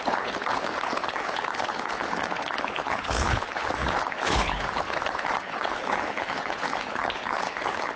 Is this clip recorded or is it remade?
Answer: remade